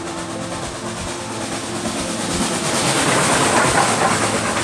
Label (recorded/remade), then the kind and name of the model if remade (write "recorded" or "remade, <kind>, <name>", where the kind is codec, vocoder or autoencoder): recorded